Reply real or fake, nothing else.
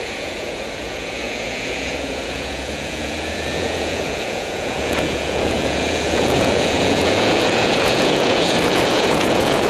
fake